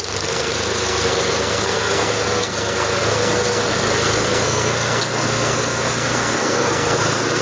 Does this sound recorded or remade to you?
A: remade